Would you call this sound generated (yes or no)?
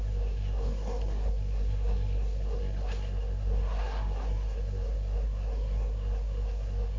yes